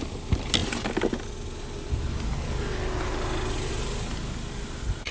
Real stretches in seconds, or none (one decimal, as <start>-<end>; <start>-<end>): 0.0-5.1